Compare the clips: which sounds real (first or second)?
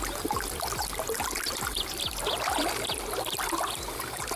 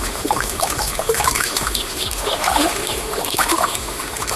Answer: first